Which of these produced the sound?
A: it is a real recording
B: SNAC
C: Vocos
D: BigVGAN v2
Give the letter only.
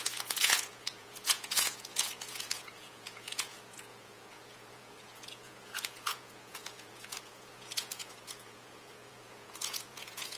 C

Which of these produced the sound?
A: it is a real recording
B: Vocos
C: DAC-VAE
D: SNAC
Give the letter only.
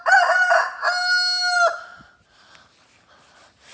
A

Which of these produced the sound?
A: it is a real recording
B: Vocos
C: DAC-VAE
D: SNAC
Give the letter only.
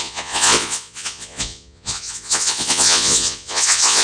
B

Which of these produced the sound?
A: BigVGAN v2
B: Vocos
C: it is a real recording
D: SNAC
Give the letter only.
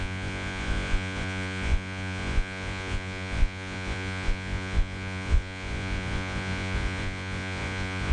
B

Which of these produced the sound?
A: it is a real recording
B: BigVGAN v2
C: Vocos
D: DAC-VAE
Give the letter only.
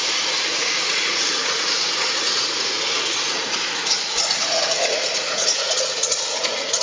C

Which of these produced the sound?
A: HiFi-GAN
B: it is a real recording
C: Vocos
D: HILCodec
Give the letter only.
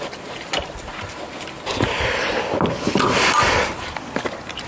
B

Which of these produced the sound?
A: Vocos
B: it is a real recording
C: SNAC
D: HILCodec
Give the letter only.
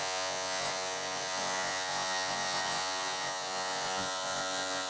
A